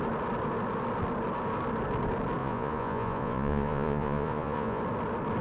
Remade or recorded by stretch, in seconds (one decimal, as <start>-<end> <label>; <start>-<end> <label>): 0.0-2.4 recorded; 2.4-4.8 remade; 4.8-5.4 recorded